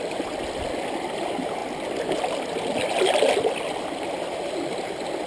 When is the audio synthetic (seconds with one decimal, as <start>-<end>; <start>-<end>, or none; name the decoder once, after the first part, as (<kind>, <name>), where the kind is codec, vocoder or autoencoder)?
none